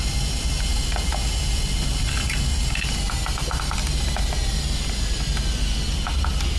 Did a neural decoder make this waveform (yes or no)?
no